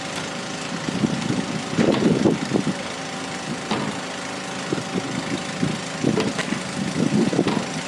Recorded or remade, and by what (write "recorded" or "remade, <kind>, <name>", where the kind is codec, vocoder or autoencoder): recorded